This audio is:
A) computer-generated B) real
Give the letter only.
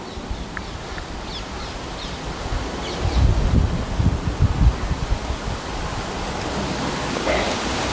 B